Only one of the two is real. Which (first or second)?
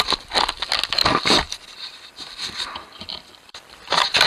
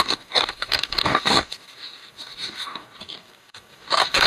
first